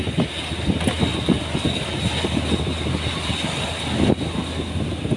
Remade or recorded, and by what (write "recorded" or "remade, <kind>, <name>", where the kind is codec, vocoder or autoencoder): recorded